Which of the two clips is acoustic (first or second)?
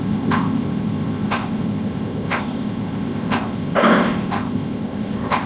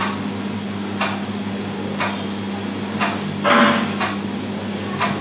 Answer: second